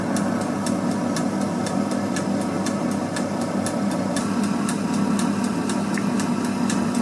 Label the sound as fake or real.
real